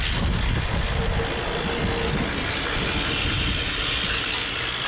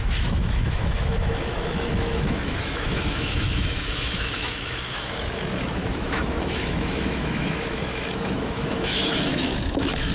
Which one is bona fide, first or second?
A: first